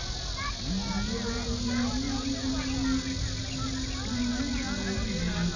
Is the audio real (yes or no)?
yes